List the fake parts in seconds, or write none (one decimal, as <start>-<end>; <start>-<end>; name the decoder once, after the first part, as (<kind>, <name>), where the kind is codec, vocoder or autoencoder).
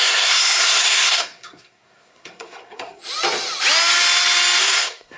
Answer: 0.0-3.0 (codec, SNAC); 4.6-5.2